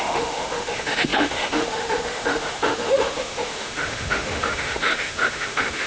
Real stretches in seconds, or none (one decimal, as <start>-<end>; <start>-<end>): none